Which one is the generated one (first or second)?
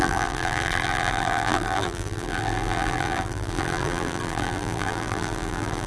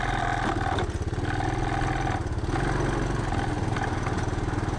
first